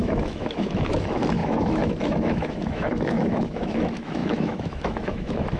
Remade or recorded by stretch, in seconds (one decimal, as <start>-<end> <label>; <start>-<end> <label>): 0.0-5.6 remade